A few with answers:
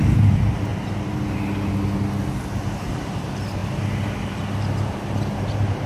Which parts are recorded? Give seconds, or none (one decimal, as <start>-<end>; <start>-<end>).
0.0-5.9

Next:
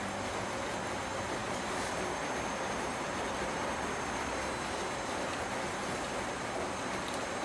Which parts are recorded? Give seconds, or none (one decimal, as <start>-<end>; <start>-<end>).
0.0-1.4; 4.4-7.4

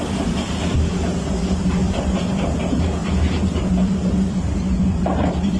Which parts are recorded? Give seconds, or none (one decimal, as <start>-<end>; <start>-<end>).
none

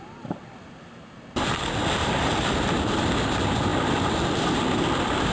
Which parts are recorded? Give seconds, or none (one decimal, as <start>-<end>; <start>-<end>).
0.0-2.0; 3.2-3.7; 4.6-5.3